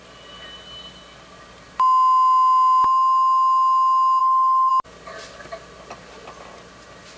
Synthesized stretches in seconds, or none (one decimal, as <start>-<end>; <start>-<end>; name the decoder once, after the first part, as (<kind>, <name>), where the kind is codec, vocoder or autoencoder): 4.2-4.7 (autoencoder, DAC-VAE)